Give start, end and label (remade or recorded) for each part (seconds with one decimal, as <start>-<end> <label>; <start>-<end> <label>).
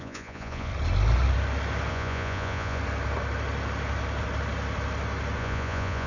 0.0-0.7 remade; 0.7-1.9 recorded; 1.9-2.8 remade; 2.8-5.4 recorded; 5.4-6.1 remade